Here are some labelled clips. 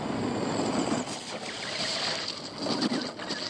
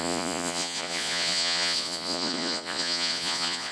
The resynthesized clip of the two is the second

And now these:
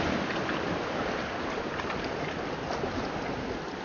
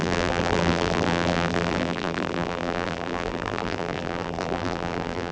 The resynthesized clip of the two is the second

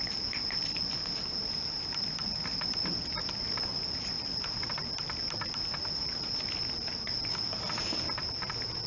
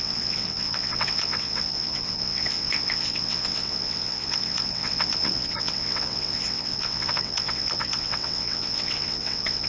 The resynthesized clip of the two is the second